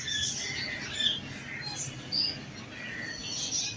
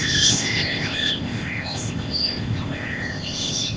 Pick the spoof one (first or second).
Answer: second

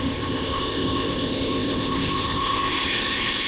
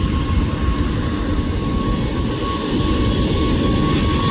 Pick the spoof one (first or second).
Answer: first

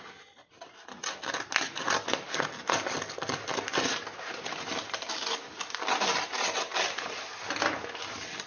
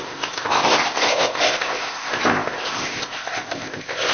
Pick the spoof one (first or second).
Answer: second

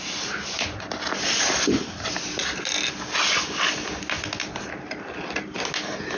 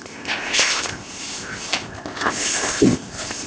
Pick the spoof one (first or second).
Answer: second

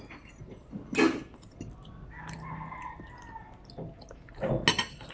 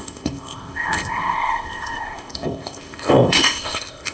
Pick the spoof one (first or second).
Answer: second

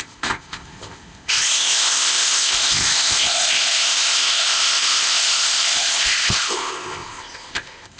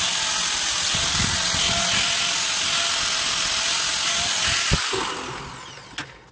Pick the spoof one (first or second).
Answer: first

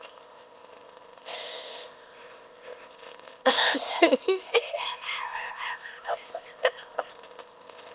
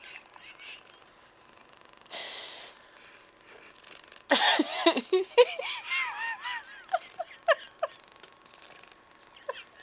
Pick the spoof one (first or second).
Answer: first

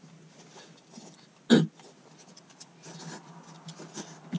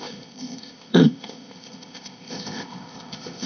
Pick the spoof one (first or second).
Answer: second